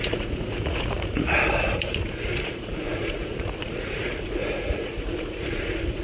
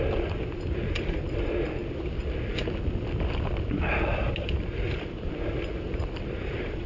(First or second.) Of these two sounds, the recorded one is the second